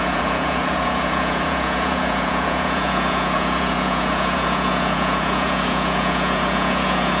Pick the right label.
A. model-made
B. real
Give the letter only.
A